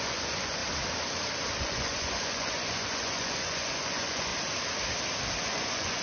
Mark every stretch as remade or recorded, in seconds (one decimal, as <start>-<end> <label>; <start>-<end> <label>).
0.0-0.6 remade; 0.6-1.6 recorded; 1.6-4.3 remade; 4.3-5.4 recorded; 5.4-6.0 remade